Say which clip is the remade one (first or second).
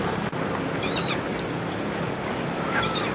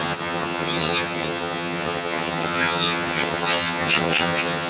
second